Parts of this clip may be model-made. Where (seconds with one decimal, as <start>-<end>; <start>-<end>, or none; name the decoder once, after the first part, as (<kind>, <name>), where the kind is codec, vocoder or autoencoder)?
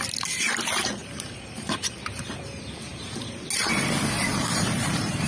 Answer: 1.0-2.4 (vocoder, BigVGAN v2); 4.3-5.3